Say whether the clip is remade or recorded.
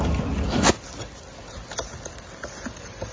recorded